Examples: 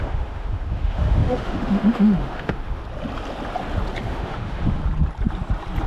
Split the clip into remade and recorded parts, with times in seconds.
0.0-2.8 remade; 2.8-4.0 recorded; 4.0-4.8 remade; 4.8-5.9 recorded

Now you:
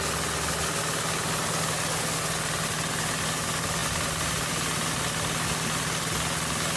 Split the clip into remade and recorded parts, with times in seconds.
0.0-6.8 recorded

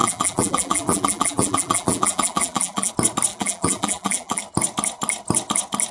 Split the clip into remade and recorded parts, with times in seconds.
0.0-2.9 remade; 2.9-3.3 recorded; 3.3-4.4 remade; 4.4-5.9 recorded

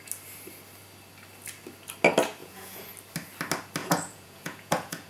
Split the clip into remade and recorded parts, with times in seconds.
0.0-2.4 recorded; 2.4-2.9 remade; 2.9-3.8 recorded; 3.8-5.1 remade

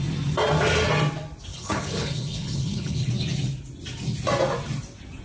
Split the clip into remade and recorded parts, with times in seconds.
0.0-1.5 recorded; 1.5-3.1 remade; 3.1-5.2 recorded

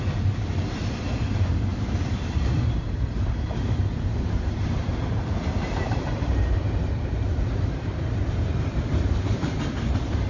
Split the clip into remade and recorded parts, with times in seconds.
0.0-10.3 remade